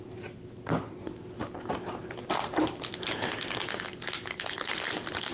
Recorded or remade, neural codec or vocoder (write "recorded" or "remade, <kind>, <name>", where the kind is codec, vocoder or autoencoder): recorded